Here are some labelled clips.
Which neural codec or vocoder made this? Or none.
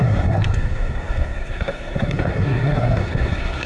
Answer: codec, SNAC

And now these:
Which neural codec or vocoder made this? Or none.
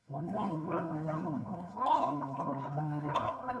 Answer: codec, SNAC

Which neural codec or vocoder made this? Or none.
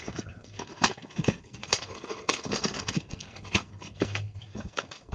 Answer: codec, SNAC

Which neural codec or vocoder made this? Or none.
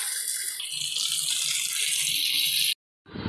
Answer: none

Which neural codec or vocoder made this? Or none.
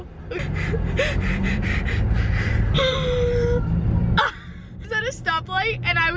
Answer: none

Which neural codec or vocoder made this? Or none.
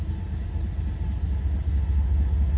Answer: none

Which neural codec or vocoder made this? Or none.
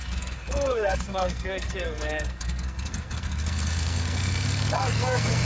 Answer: codec, SNAC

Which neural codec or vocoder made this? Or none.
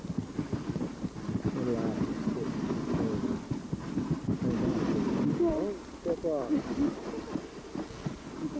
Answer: none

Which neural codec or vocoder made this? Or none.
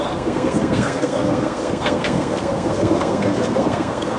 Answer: codec, SNAC